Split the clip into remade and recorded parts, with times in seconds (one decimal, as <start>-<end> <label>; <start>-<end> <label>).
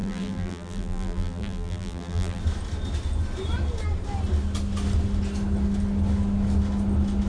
0.0-2.4 remade; 2.4-7.3 recorded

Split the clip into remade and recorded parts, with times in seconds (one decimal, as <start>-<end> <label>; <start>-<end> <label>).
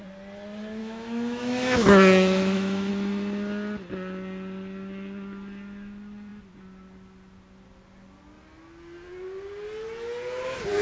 0.0-0.8 recorded; 0.8-2.9 remade; 2.9-10.8 recorded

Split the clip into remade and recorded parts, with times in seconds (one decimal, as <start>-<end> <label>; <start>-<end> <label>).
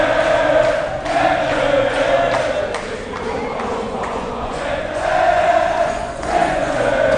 0.0-1.5 recorded; 1.5-2.0 remade; 2.0-3.7 recorded; 3.7-7.2 remade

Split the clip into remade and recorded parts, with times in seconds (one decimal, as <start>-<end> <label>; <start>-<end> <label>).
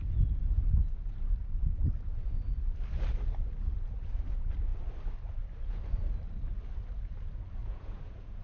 0.0-7.6 recorded; 7.6-8.4 remade